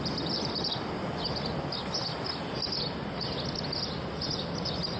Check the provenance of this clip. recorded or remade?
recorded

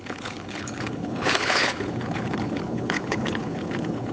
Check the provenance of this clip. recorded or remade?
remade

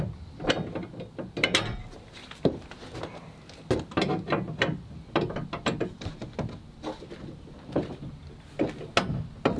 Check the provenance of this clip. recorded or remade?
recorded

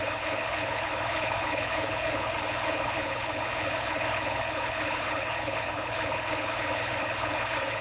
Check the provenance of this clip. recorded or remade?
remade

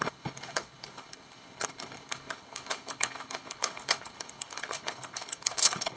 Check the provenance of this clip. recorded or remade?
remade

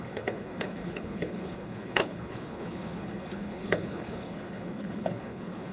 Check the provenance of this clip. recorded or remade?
remade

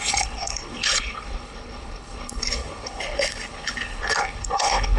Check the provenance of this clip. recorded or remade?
remade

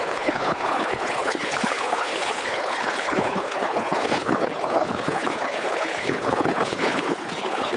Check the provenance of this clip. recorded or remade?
remade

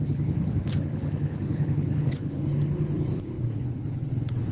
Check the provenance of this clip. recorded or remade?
remade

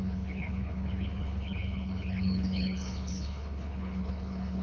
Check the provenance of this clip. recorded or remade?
remade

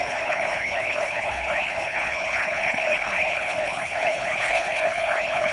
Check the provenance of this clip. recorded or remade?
remade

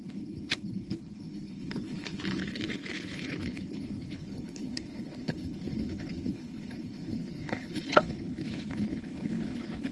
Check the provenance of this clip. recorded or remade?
remade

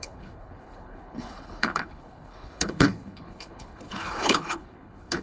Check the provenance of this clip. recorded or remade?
remade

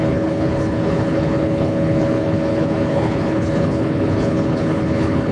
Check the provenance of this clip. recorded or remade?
remade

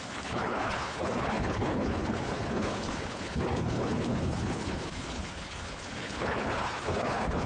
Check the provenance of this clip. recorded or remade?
remade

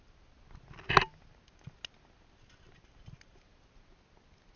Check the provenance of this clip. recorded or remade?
recorded